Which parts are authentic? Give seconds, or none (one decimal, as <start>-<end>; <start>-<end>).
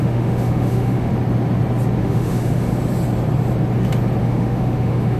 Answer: 1.1-2.0; 2.7-4.2